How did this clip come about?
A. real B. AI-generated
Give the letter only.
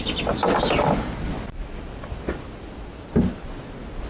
A